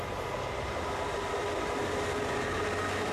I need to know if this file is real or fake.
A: real